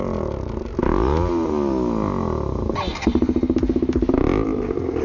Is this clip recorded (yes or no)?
yes